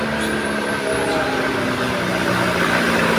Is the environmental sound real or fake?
real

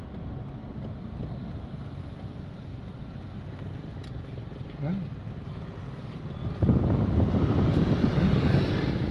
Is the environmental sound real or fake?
real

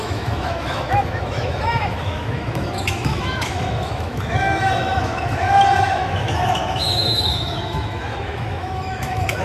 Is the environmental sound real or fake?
fake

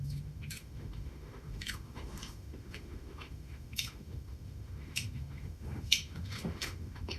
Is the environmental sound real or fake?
fake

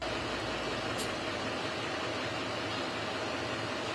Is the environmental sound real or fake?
real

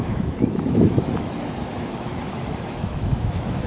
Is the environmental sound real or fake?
fake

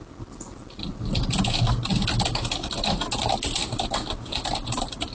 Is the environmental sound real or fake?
real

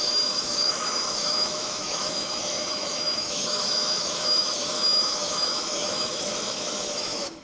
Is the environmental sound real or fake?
fake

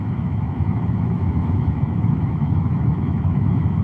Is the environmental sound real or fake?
fake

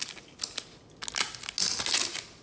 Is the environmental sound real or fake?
real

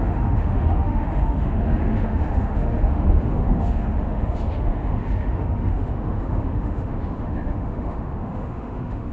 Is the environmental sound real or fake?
fake